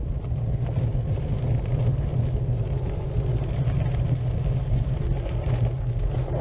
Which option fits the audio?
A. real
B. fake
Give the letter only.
A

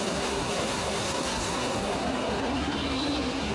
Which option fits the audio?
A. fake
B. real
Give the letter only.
A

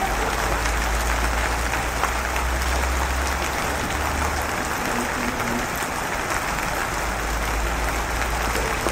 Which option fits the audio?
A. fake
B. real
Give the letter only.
B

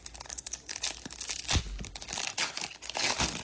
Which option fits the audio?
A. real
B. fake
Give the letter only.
A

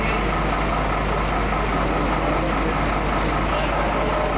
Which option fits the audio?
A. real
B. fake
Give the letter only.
A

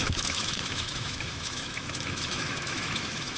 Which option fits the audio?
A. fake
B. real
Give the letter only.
A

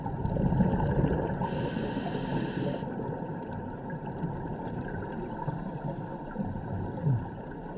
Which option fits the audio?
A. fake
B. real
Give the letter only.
B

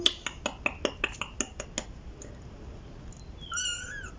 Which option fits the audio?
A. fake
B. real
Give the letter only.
B